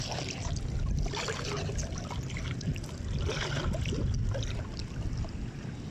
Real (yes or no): yes